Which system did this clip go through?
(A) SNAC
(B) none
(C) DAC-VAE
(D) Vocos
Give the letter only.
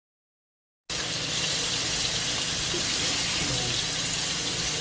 B